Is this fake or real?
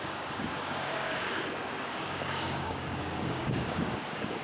fake